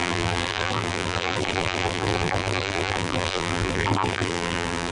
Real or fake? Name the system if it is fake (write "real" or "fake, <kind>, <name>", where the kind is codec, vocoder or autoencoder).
fake, vocoder, BigVGAN v2